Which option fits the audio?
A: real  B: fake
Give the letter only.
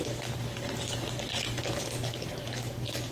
B